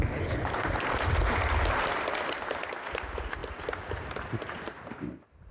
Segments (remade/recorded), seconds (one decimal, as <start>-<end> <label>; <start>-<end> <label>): 0.0-5.5 recorded

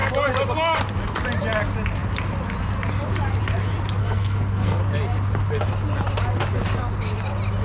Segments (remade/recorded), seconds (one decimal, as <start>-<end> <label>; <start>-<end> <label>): 0.0-4.0 recorded; 4.0-4.8 remade; 4.8-7.6 recorded

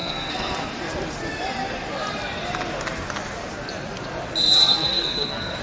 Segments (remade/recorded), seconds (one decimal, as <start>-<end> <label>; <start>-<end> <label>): 0.0-0.6 remade; 0.6-4.6 recorded; 4.6-5.6 remade

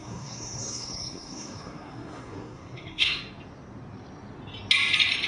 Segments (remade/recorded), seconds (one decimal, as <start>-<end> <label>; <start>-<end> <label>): 0.0-3.2 remade; 3.2-5.3 recorded

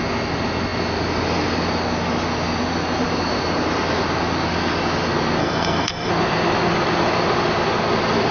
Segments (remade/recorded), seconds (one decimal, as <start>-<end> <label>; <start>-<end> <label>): 0.0-5.4 recorded; 5.4-6.1 remade; 6.1-8.3 recorded

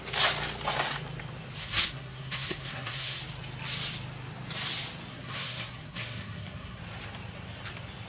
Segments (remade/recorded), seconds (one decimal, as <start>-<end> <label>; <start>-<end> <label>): 0.0-1.6 recorded; 1.6-3.2 remade; 3.2-5.1 recorded; 5.1-6.8 remade; 6.8-8.1 recorded

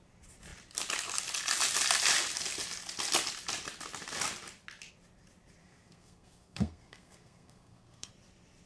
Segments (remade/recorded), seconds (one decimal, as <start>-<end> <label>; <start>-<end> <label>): 0.0-5.6 recorded; 5.6-8.1 remade; 8.1-8.7 recorded

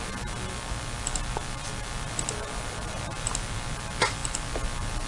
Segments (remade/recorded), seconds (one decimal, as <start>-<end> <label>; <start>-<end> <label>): 0.0-5.1 recorded